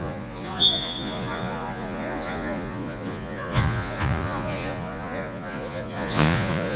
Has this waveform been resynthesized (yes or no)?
yes